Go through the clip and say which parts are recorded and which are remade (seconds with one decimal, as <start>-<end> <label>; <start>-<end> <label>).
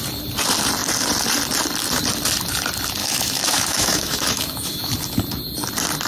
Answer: 0.0-3.0 recorded; 3.0-4.9 remade; 4.9-6.1 recorded